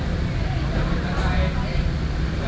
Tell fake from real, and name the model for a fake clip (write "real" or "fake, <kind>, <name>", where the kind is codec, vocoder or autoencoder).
real